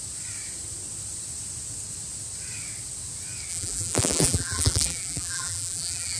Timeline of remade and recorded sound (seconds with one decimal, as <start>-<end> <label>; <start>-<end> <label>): 0.0-3.5 recorded; 3.5-6.2 remade